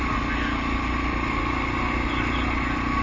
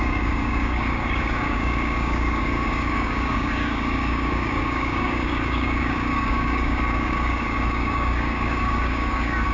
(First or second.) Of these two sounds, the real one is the first